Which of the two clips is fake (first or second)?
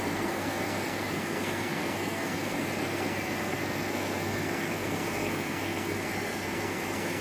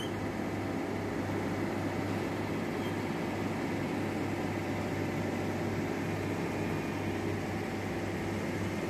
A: first